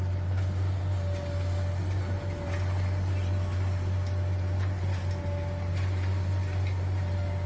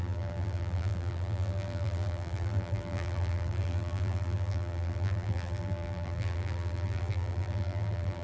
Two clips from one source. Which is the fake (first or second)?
second